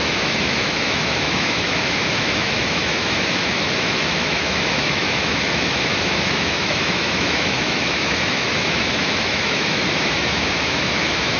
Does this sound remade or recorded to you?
remade